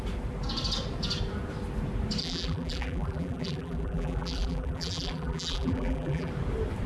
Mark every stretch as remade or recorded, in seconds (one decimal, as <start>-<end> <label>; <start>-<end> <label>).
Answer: 0.0-2.2 recorded; 2.2-6.3 remade; 6.3-6.9 recorded